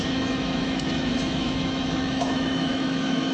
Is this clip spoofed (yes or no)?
yes